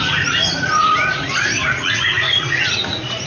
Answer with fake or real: fake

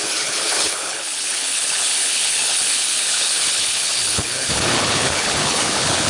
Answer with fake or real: fake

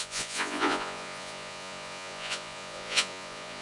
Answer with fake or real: fake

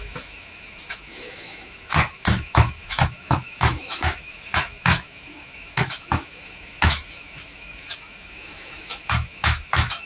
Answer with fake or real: fake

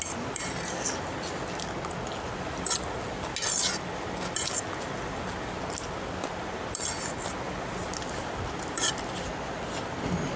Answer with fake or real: real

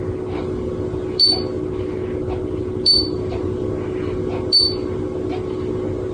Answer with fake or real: real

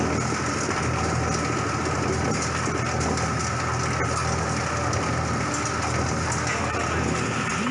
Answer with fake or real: real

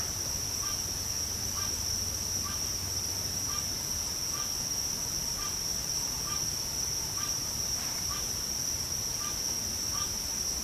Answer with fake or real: real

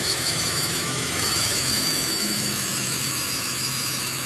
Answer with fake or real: fake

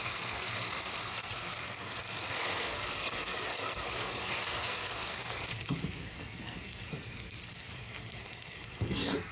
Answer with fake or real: fake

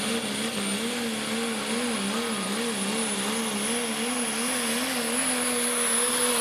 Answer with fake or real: real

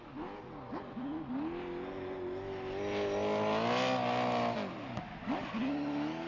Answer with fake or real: real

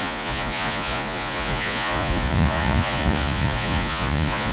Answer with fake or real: fake